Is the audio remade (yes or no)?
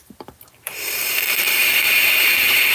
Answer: yes